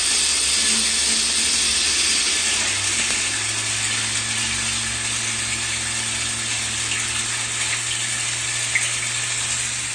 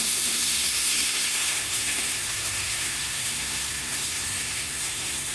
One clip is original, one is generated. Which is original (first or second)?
first